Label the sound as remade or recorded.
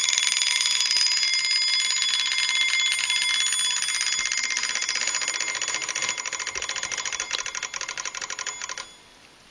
recorded